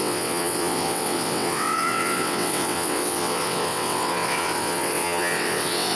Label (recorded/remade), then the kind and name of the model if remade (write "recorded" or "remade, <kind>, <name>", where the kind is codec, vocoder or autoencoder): remade, vocoder, WaveNeXt